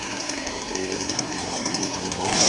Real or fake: fake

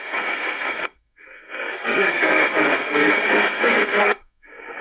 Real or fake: fake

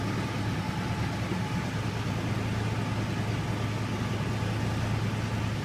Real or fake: real